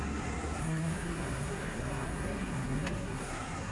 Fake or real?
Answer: fake